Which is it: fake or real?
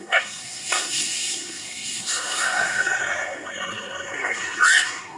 fake